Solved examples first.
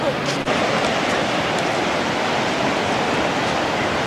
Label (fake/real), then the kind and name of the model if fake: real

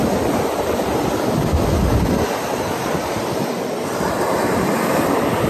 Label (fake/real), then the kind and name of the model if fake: real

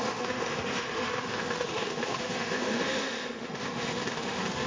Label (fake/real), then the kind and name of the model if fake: fake, autoencoder, DAC-VAE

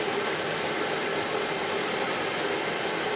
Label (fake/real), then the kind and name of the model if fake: real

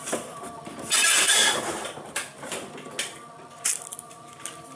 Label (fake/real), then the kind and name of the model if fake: real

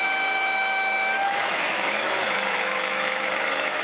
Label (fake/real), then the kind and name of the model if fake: fake, autoencoder, DAC-VAE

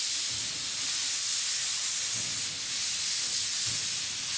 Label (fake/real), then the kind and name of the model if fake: real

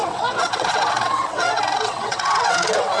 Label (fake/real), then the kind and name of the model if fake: fake, vocoder, WaveNeXt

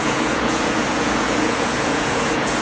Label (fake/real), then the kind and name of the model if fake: fake, vocoder, Vocos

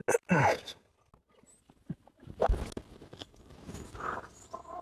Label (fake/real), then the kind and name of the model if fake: real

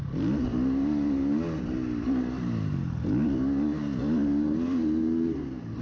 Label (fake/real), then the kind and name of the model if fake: real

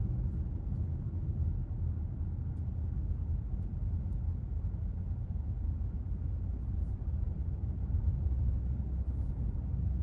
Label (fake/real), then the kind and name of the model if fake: real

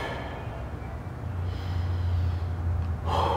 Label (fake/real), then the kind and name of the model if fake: real